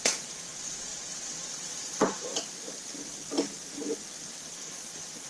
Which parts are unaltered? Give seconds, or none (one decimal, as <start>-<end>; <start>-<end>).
2.3-4.4